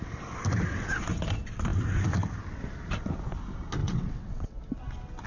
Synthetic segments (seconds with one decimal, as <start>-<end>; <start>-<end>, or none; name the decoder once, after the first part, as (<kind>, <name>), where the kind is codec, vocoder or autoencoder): 3.8-4.6 (vocoder, WaveNeXt)